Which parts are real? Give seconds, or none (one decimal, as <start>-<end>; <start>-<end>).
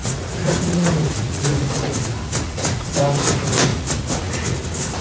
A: 3.0-3.7